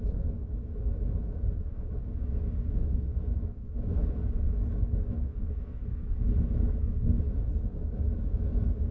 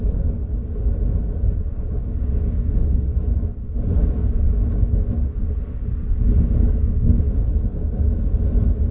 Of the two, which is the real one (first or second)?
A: second